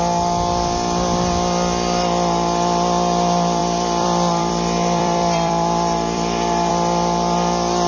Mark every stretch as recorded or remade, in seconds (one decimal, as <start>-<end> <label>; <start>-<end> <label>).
0.0-3.6 recorded; 3.6-6.7 remade; 6.7-7.9 recorded